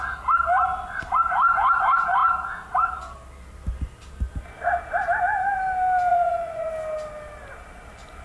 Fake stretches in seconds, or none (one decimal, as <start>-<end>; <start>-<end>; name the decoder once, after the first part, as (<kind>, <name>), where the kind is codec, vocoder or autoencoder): 6.1-6.7 (vocoder, Vocos)